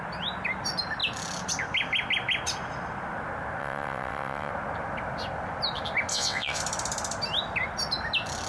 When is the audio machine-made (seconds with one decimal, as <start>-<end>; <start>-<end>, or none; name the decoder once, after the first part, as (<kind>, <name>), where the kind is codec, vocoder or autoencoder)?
3.6-4.5 (vocoder, WaveNeXt); 6.1-6.6